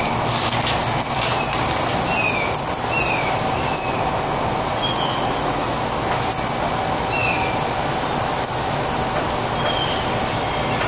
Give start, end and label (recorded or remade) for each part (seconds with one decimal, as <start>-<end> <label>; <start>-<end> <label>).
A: 0.0-4.7 recorded; 4.7-5.7 remade; 5.7-10.9 recorded